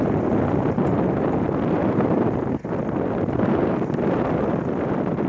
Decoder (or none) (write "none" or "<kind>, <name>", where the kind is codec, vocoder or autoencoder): none